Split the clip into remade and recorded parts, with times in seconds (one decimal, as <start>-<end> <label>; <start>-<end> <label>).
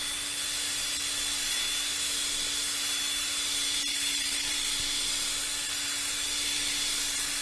0.0-3.9 recorded; 3.9-4.5 remade; 4.5-7.4 recorded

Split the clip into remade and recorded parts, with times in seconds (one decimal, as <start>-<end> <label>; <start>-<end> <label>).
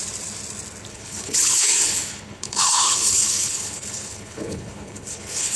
0.0-0.9 recorded; 0.9-5.6 remade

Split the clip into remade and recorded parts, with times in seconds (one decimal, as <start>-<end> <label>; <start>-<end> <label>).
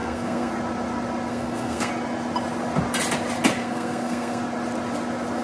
0.0-0.5 remade; 0.5-1.3 recorded; 1.3-1.9 remade; 1.9-3.6 recorded; 3.6-4.4 remade; 4.4-5.4 recorded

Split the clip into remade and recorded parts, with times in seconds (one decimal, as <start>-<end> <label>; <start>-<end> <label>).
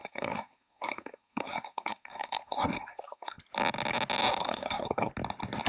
0.0-3.4 remade; 3.4-4.4 recorded; 4.4-5.1 remade; 5.1-5.7 recorded